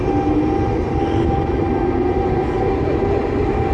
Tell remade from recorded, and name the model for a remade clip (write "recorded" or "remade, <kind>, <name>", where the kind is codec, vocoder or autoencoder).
recorded